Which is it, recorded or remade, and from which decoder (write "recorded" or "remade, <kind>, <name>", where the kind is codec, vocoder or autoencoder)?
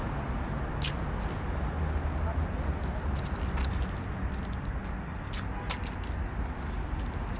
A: recorded